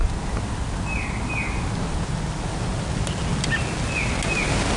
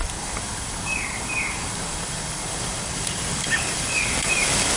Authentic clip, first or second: first